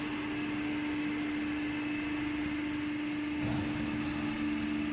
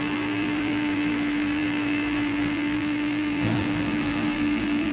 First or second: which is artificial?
second